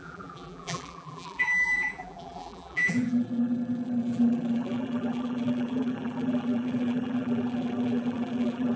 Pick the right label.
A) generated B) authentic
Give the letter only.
A